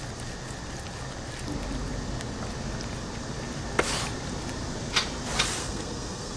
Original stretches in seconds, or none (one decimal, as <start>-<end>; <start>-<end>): 0.0-5.6